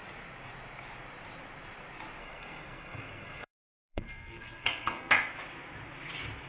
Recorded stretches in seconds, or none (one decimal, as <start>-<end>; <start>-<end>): 0.0-2.2; 5.1-6.5